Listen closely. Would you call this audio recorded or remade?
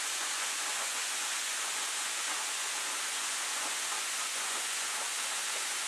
remade